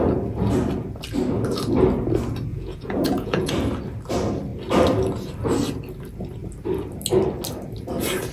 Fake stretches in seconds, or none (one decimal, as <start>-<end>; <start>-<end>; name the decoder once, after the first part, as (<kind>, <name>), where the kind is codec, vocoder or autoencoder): 2.5-3.5 (vocoder, Vocos)